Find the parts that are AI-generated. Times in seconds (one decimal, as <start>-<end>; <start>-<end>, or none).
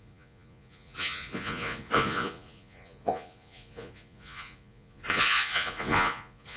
0.0-6.6